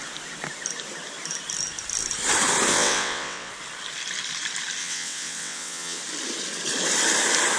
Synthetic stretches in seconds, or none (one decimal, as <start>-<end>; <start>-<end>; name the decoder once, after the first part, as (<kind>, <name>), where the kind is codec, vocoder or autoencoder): 2.7-3.5 (vocoder, WaveNeXt); 4.8-6.0